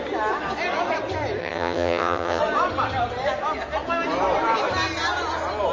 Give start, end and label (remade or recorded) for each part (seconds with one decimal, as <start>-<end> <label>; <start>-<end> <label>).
0.0-1.4 recorded; 1.4-2.4 remade; 2.4-5.7 recorded